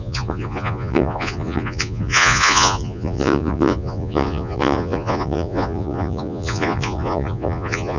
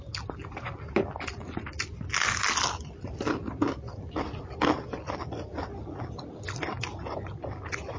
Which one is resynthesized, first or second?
first